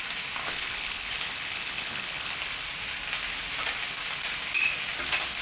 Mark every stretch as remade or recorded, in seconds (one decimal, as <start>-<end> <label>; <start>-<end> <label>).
0.0-0.4 recorded; 0.4-2.4 remade; 2.4-5.4 recorded